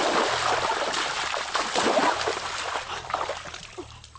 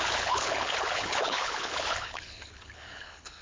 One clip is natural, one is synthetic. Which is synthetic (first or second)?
second